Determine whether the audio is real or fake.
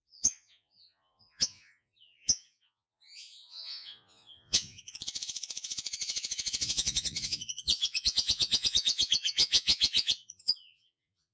fake